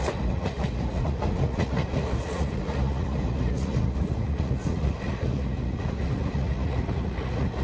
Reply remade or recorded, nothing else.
remade